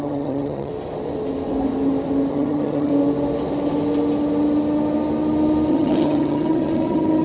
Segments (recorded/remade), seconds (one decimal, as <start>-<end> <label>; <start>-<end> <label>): 0.0-0.7 remade; 0.7-2.3 recorded; 2.3-2.9 remade; 2.9-5.7 recorded; 5.7-7.2 remade